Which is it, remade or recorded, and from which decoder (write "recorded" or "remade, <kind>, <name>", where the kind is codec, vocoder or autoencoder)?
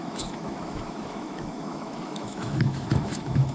remade, autoencoder, DAC-VAE